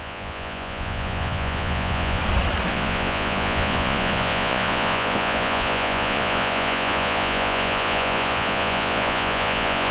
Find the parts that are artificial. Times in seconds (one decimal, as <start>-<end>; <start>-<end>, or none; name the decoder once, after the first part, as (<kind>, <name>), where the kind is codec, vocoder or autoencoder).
0.0-2.2 (vocoder, Vocos); 2.7-9.9